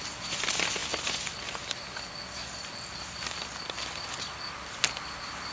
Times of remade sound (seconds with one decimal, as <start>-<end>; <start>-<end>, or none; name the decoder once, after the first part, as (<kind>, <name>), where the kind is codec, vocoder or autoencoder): none